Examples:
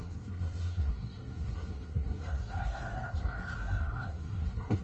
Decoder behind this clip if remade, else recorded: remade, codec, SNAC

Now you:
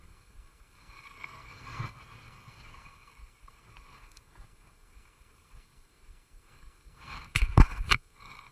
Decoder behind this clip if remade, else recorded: remade, codec, SNAC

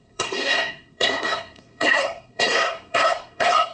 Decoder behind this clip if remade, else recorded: remade, codec, SNAC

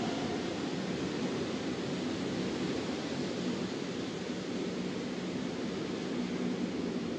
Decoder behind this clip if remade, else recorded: recorded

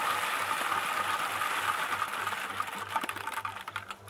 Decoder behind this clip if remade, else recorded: recorded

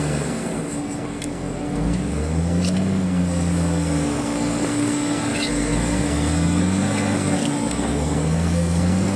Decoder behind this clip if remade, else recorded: remade, codec, SNAC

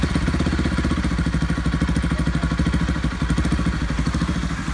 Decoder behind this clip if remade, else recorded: recorded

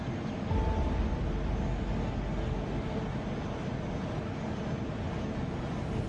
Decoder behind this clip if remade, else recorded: recorded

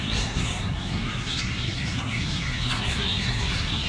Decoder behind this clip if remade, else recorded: remade, codec, SNAC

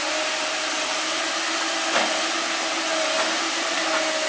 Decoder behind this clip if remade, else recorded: recorded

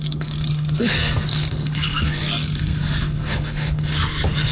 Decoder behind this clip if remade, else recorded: remade, codec, SNAC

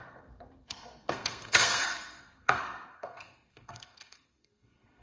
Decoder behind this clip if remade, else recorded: remade, codec, SNAC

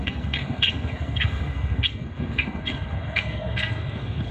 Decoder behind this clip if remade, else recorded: remade, codec, SNAC